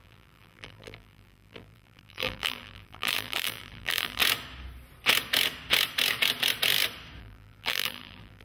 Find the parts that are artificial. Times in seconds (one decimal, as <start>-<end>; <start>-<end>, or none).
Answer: 0.0-4.2; 7.2-8.4